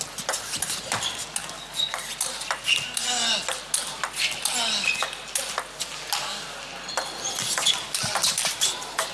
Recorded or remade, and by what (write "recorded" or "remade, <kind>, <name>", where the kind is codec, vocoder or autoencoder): recorded